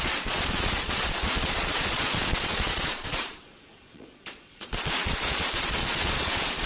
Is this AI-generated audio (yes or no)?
yes